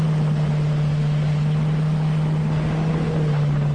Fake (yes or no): no